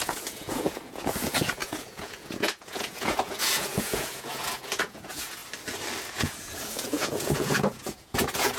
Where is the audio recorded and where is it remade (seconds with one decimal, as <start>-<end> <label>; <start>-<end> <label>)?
0.0-5.4 remade; 5.4-6.1 recorded; 6.1-8.6 remade